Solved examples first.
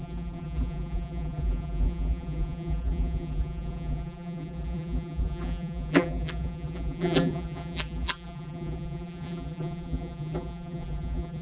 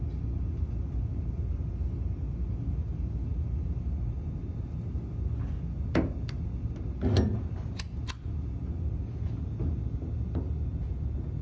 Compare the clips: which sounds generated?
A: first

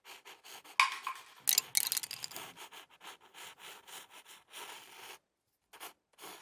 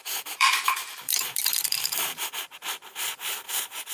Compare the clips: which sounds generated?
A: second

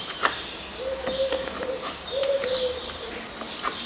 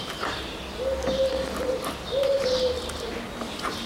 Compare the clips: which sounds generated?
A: first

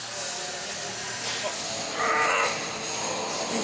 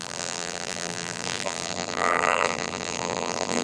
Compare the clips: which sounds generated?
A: second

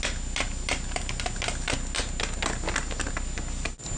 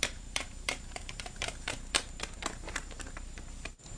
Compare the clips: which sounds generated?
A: second